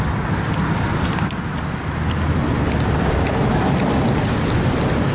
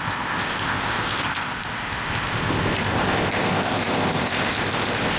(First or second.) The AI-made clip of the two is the second